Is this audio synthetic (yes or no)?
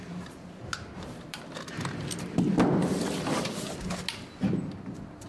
no